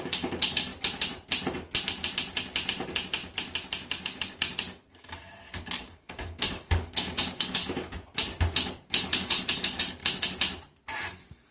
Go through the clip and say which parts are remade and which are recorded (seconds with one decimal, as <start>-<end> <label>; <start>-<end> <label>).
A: 0.0-0.7 remade; 0.7-4.9 recorded; 4.9-7.6 remade; 7.6-8.9 recorded; 8.9-10.0 remade; 10.0-11.1 recorded; 11.1-11.5 remade